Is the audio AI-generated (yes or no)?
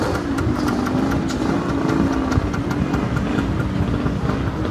no